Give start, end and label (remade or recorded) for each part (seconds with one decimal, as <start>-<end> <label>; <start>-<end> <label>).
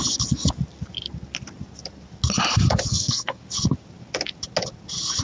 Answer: 0.0-2.9 recorded; 2.9-3.4 remade; 3.4-5.2 recorded